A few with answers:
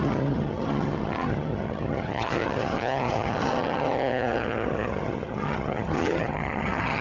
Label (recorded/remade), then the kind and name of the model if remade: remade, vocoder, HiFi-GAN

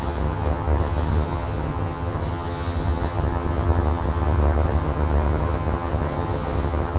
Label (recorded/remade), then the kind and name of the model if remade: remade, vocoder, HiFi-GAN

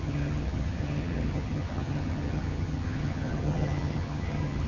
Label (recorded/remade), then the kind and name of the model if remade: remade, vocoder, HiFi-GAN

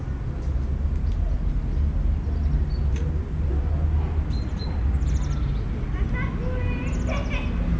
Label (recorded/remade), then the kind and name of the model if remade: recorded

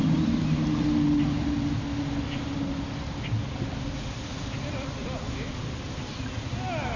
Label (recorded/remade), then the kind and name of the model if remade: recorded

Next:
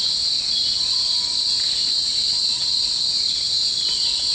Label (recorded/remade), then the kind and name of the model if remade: recorded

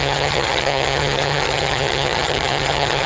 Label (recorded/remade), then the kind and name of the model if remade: remade, vocoder, HiFi-GAN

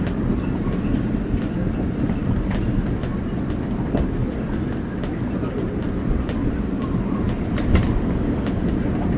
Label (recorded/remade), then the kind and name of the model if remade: recorded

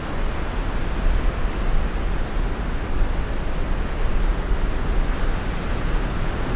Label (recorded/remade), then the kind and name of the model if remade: recorded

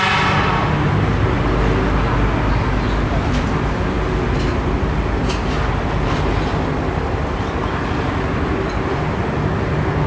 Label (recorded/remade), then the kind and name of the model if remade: recorded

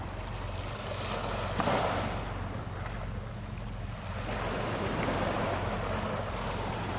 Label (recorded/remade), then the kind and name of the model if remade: recorded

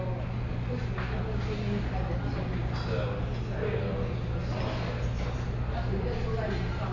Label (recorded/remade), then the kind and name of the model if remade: recorded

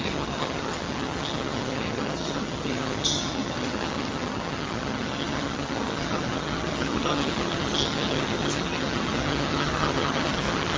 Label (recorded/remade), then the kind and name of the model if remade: remade, vocoder, HiFi-GAN